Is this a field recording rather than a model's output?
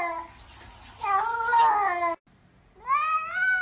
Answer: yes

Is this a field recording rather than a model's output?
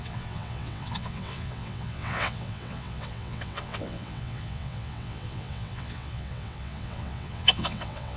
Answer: no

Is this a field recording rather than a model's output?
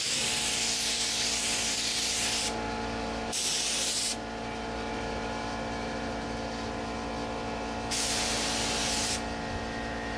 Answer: yes